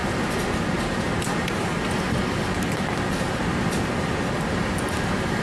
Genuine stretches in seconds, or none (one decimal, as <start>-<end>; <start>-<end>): 0.0-5.4